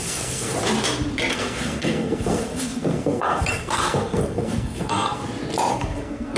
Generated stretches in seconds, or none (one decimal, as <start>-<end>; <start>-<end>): 0.0-0.5; 1.3-5.2; 5.7-6.4